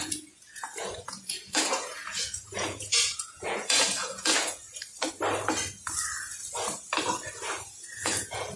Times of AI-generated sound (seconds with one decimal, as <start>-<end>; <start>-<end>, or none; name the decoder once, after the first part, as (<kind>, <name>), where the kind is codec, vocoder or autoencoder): 0.0-4.6 (vocoder, Vocos); 7.6-8.6